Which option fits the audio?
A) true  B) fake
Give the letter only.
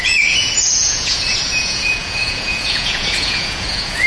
B